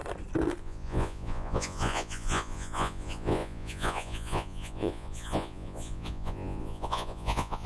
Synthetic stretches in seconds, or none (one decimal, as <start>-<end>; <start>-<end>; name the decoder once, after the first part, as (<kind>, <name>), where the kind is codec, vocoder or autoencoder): 0.6-7.7 (vocoder, Vocos)